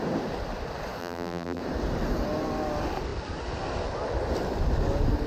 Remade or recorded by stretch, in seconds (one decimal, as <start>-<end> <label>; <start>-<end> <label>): 0.0-1.0 recorded; 1.0-1.6 remade; 1.6-5.3 recorded